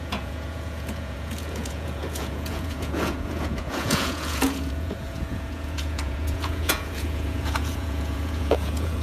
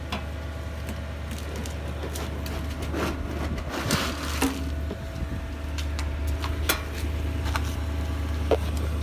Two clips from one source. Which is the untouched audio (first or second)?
second